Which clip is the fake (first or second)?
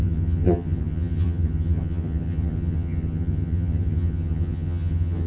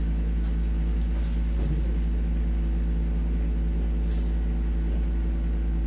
first